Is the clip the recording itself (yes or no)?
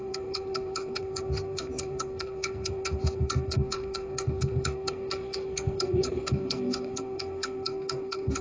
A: no